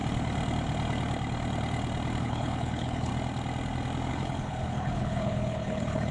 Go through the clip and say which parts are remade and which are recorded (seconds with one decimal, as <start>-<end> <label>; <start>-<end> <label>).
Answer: 0.0-2.2 recorded; 2.2-3.1 remade; 3.1-4.1 recorded; 4.1-6.1 remade